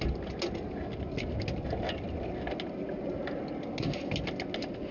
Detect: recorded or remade recorded